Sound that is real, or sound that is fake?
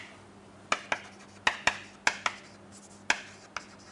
real